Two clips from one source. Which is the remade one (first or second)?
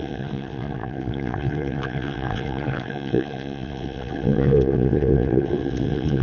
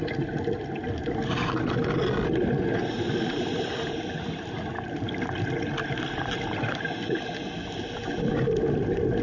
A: first